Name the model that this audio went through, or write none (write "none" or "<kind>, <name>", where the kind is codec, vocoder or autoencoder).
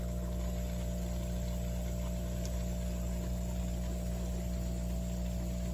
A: none